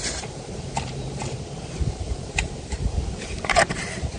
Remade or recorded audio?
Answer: remade